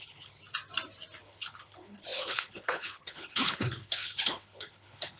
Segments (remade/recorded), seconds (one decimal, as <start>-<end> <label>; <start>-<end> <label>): 0.0-0.4 remade; 0.4-1.2 recorded; 1.2-5.2 remade